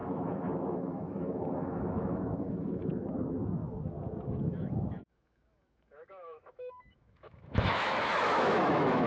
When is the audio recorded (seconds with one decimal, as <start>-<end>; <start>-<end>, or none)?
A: 2.9-4.4